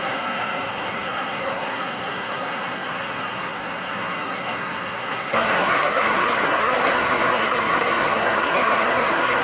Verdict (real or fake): fake